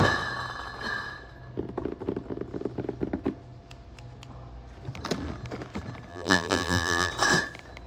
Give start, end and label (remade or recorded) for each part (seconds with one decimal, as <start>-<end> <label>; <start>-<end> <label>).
0.0-6.1 recorded; 6.1-7.1 remade; 7.1-7.9 recorded